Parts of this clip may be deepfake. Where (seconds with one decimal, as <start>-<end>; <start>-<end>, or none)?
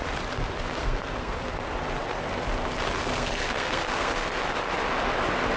0.8-1.5; 3.0-4.4